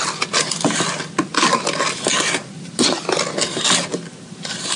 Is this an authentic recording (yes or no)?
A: yes